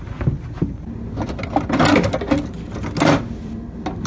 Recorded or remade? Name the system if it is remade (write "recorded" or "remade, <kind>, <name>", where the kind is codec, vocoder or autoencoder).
recorded